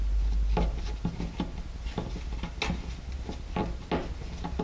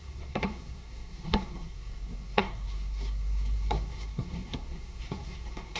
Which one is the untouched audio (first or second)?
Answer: first